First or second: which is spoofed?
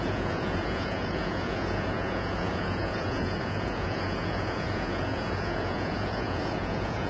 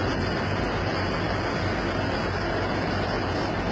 first